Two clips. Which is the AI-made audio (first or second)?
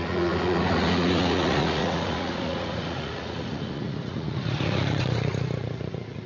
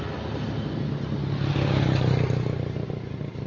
first